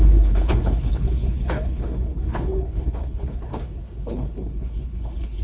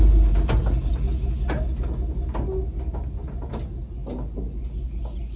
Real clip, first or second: second